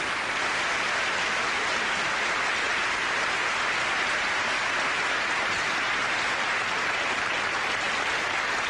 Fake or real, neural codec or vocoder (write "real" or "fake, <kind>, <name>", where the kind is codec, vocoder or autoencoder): real